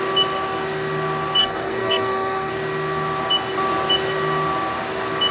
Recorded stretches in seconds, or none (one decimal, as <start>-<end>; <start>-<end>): 0.0-1.4; 2.5-5.3